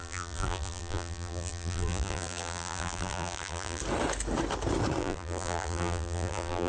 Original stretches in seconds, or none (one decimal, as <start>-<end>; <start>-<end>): 3.8-5.0